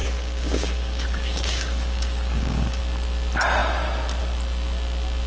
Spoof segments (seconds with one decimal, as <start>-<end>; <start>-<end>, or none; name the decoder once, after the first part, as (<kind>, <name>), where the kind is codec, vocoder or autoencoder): 0.0-2.8 (codec, DAC)